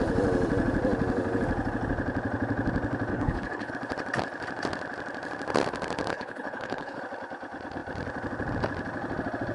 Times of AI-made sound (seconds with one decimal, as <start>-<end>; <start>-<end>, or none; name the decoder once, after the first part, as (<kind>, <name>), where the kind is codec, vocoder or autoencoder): 3.1-3.7 (codec, HILCodec); 6.1-7.0